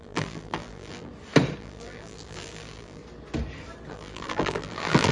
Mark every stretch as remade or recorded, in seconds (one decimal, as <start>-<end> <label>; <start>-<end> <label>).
0.0-1.1 remade; 1.1-1.6 recorded; 1.6-3.0 remade; 3.0-3.9 recorded; 3.9-5.1 remade